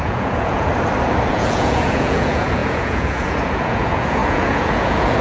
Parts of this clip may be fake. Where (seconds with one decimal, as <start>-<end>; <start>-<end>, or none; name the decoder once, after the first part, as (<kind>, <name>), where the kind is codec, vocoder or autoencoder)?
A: 0.0-0.7 (vocoder, Vocos); 1.3-5.2